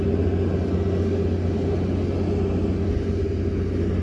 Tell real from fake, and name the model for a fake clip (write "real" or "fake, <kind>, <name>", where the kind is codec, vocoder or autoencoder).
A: real